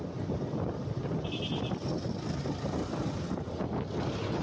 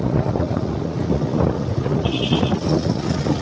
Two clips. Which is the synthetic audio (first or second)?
second